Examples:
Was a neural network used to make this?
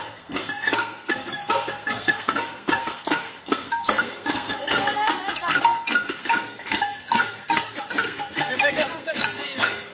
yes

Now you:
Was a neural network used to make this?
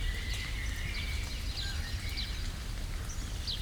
no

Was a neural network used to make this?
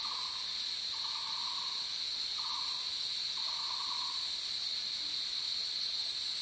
no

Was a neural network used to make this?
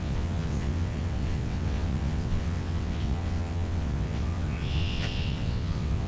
yes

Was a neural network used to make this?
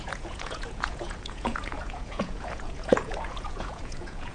yes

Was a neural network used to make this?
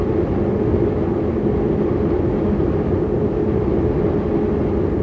no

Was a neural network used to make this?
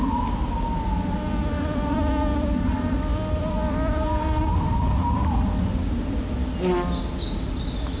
no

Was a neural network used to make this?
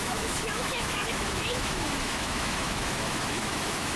yes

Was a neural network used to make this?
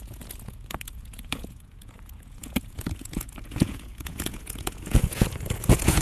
yes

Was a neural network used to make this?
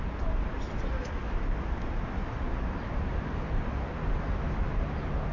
no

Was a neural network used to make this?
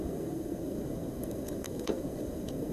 yes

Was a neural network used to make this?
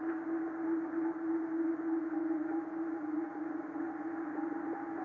no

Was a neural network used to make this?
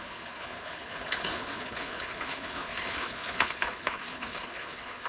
yes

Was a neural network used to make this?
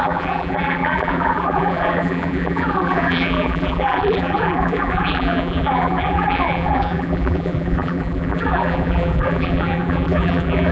yes